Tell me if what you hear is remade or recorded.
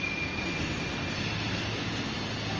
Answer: recorded